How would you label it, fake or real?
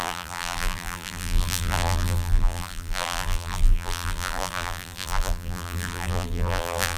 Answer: fake